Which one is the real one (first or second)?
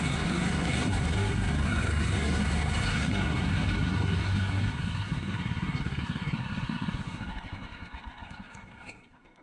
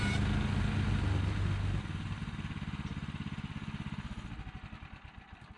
second